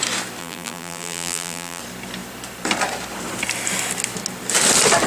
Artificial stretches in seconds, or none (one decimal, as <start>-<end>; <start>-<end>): 0.4-1.8